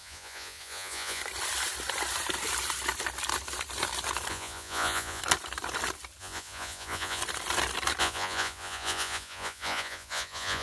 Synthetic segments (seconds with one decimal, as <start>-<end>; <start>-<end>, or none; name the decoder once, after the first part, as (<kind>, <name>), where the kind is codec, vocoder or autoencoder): 0.0-1.2 (vocoder, Vocos); 4.3-5.2; 6.2-7.2; 8.0-10.6